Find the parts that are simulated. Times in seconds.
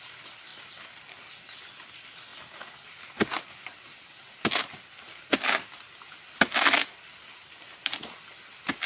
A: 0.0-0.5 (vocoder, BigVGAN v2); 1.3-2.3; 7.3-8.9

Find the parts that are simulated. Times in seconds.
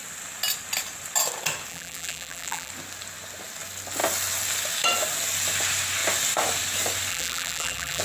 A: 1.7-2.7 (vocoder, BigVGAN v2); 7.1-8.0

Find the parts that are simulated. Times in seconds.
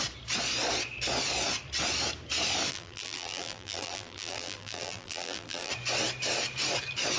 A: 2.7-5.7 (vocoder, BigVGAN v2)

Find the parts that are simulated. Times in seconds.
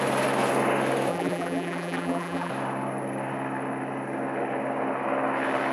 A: 1.1-2.5 (vocoder, BigVGAN v2)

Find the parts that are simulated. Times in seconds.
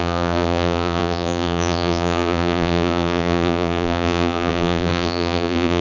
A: 0.0-5.8 (vocoder, BigVGAN v2)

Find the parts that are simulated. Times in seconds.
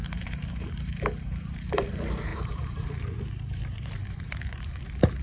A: 0.0-1.9 (vocoder, BigVGAN v2); 2.3-4.6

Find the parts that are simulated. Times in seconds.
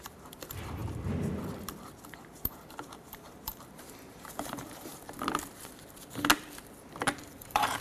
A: 0.0-0.8 (vocoder, BigVGAN v2); 2.0-4.9; 7.2-7.8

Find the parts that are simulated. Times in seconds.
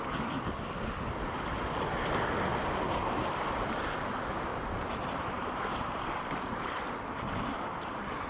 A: 2.5-3.8 (vocoder, BigVGAN v2); 4.5-6.6